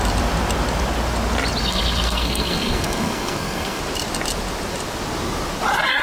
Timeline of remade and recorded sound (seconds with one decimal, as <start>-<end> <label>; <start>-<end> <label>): 0.0-1.6 recorded; 1.6-3.8 remade; 3.8-6.0 recorded